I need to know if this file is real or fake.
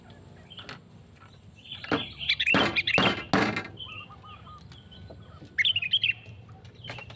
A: real